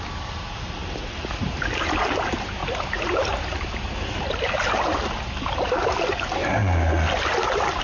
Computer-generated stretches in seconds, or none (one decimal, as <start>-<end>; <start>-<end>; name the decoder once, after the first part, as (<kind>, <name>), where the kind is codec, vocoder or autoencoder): none